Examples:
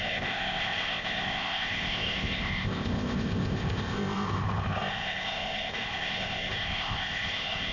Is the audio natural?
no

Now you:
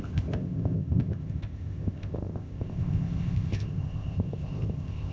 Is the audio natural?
no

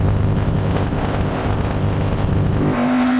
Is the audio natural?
no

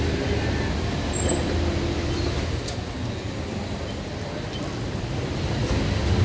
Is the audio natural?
yes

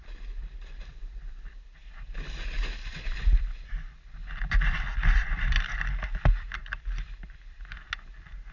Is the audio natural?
yes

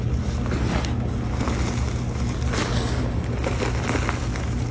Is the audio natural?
yes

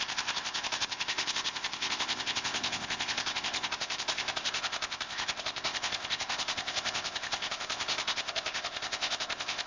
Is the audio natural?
no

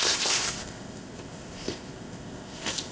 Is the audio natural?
no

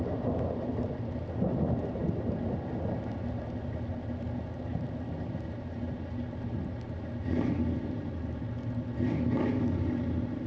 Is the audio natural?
yes